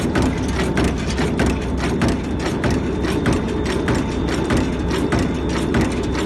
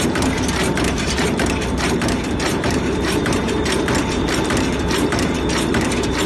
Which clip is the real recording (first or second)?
first